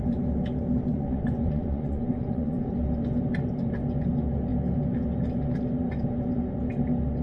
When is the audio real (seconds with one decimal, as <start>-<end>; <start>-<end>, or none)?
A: 0.0-0.9; 2.7-7.2